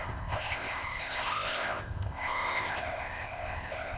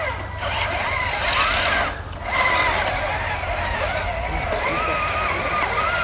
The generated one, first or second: first